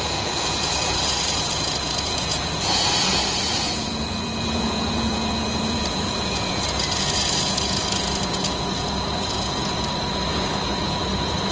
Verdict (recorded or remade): remade